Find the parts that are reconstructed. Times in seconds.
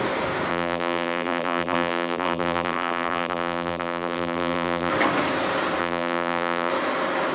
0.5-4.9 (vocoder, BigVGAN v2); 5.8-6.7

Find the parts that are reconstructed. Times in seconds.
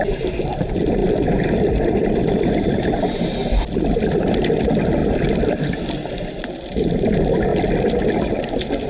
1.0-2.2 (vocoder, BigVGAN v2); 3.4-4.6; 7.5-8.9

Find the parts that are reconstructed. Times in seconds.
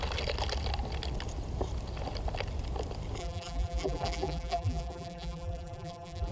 3.2-6.3 (vocoder, BigVGAN v2)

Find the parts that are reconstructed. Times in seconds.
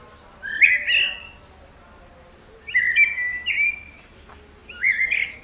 4.6-5.4 (vocoder, BigVGAN v2)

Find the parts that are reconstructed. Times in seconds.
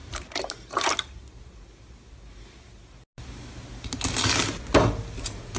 0.0-1.2 (vocoder, BigVGAN v2)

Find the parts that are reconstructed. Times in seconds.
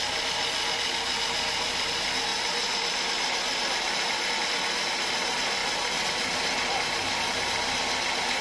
2.3-4.3 (vocoder, BigVGAN v2)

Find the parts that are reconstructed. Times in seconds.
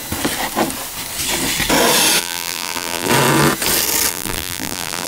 2.2-3.1 (vocoder, BigVGAN v2); 4.1-5.1